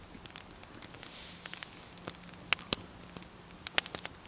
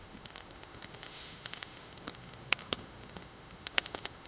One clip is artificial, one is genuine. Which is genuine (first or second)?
first